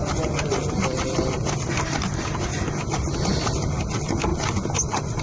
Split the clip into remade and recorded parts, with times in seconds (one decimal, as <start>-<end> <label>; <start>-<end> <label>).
0.0-5.2 recorded